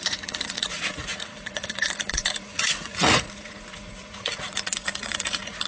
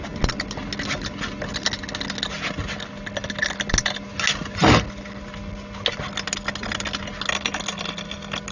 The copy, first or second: first